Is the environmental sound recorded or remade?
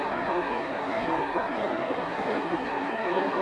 remade